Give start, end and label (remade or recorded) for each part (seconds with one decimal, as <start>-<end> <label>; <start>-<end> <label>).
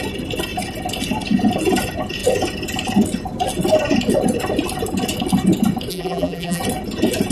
0.0-5.9 recorded; 5.9-6.6 remade; 6.6-7.3 recorded